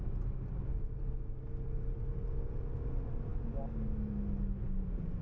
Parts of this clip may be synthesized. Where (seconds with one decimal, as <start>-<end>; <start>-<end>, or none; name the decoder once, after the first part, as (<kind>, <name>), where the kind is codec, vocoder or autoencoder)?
none